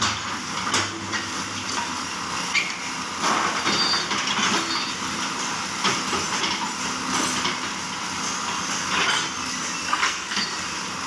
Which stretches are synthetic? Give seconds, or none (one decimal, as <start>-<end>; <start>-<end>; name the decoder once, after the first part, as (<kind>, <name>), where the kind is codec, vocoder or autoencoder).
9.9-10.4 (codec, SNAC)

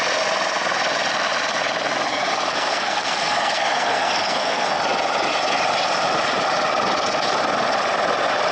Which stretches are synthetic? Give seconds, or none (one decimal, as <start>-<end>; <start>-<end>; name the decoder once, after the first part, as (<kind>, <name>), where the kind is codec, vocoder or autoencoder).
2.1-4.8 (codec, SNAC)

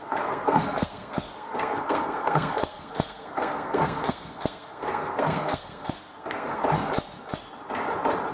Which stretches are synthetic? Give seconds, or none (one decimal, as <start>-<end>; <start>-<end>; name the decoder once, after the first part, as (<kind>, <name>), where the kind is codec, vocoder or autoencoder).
0.0-6.6 (codec, SNAC)

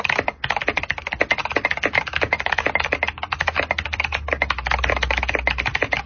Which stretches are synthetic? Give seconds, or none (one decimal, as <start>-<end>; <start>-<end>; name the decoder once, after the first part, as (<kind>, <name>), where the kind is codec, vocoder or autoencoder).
none

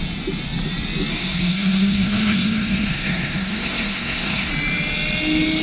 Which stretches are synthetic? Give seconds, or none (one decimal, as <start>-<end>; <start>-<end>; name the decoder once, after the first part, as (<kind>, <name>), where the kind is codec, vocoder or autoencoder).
1.1-4.5 (codec, SNAC)

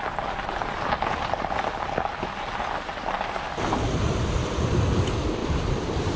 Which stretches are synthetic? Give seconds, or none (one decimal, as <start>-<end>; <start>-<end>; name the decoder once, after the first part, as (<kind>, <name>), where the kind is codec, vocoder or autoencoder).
none

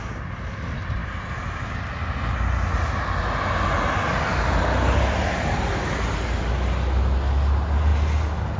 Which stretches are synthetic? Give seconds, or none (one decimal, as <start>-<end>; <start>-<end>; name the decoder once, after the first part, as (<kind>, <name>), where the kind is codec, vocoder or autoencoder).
none

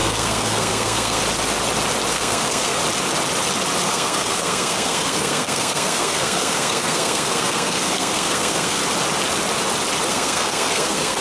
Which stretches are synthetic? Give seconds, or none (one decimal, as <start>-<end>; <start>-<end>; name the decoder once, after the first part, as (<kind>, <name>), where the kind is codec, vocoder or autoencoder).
0.0-1.2 (codec, SNAC); 2.1-2.8; 3.8-8.8; 10.1-11.2